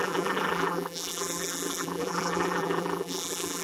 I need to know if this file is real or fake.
fake